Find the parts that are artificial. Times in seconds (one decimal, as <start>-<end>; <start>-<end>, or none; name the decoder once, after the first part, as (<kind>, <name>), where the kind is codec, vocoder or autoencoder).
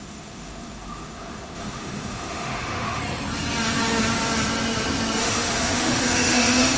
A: 0.0-3.0 (autoencoder, DAC-VAE); 5.2-6.8